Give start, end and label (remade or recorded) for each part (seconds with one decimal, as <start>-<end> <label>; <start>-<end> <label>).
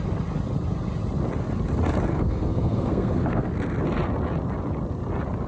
0.0-2.1 recorded; 2.1-3.5 remade; 3.5-5.5 recorded